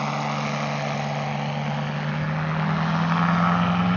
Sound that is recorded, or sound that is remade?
recorded